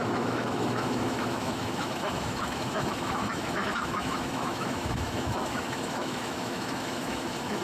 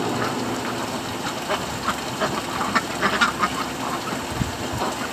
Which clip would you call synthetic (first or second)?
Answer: first